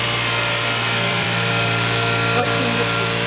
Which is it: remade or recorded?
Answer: remade